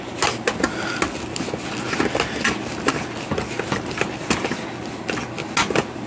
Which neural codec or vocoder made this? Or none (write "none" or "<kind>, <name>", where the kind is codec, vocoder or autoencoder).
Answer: none